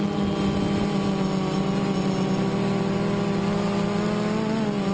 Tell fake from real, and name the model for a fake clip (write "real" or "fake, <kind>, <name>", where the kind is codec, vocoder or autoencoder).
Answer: real